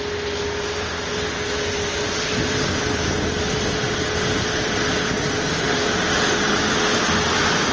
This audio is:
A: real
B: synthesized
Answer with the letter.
A